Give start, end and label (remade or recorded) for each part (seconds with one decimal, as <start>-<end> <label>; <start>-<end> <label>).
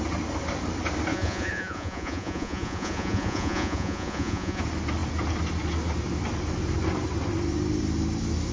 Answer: 0.0-1.1 recorded; 1.1-4.6 remade; 4.6-8.5 recorded